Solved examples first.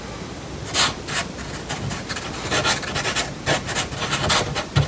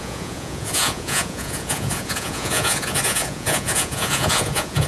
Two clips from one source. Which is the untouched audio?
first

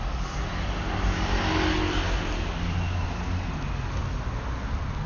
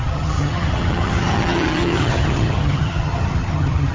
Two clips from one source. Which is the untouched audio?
first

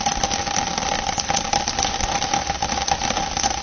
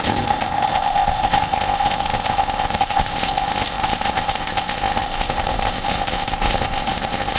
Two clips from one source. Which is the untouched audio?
first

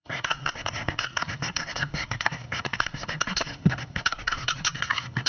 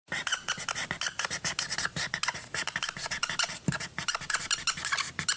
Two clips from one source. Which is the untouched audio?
second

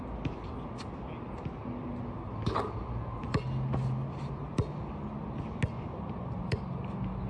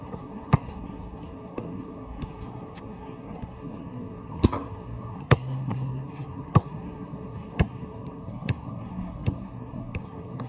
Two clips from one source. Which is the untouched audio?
first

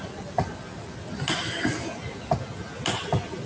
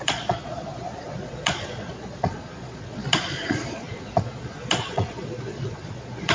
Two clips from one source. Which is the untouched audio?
first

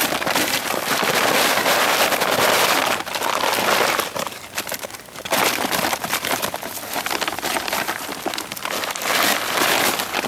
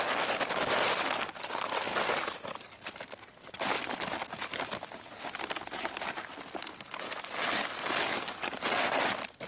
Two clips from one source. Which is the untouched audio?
second